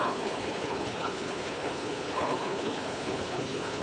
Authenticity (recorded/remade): remade